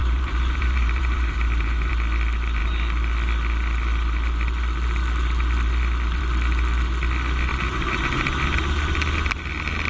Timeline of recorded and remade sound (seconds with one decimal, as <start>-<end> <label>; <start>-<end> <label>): 0.0-1.9 remade; 1.9-7.5 recorded; 7.5-8.2 remade; 8.2-9.9 recorded